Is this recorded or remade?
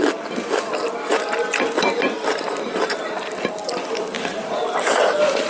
remade